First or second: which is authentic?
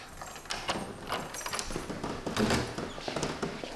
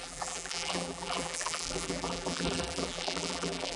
first